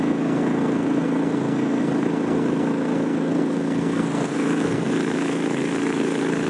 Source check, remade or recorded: remade